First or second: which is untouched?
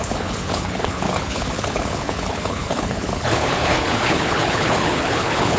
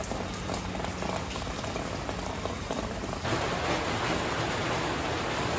second